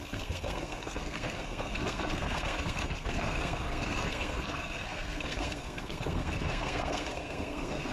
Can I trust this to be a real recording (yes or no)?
no